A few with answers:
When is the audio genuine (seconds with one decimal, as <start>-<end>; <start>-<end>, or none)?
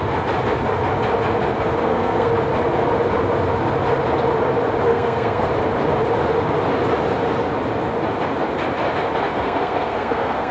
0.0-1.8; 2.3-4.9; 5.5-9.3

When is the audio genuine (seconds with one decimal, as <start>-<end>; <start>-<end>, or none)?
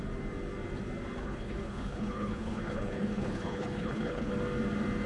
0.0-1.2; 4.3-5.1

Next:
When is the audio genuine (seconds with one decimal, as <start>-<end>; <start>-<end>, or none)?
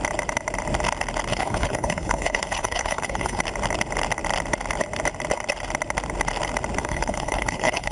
0.0-1.3; 3.4-6.8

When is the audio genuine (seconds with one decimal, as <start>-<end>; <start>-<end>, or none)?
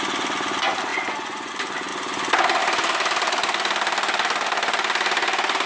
0.0-0.9; 1.5-5.7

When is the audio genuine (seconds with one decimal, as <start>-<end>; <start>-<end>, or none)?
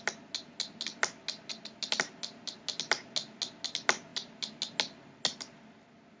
0.0-6.2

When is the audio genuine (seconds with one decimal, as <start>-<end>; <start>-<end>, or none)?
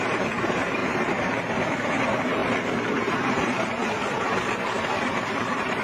2.4-3.0; 3.8-5.1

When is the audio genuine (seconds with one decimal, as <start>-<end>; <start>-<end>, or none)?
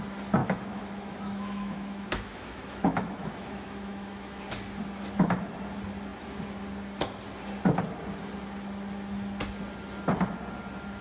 0.0-0.4; 4.4-11.0